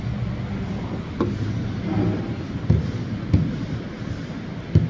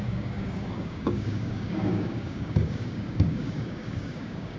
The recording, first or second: first